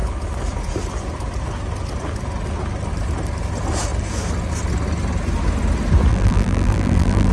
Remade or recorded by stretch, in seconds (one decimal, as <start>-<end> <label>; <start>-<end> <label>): 0.0-6.1 recorded; 6.1-7.3 remade